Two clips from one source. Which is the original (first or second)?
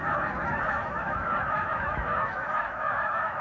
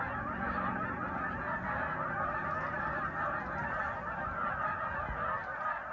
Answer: second